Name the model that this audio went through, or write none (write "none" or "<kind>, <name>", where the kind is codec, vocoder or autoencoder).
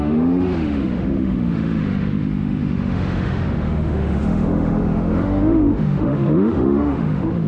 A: autoencoder, DAC-VAE